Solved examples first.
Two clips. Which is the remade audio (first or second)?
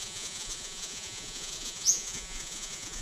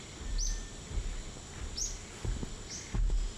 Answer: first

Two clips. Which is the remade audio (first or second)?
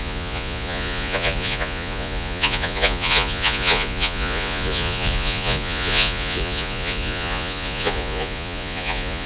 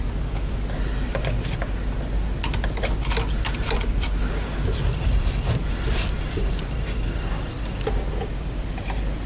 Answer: first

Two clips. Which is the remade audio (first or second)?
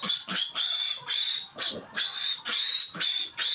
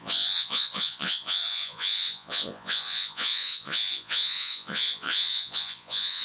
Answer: second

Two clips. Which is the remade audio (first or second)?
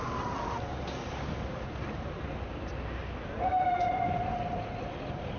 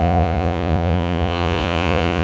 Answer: second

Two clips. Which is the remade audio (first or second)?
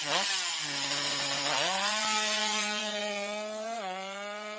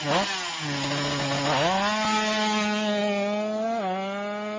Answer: first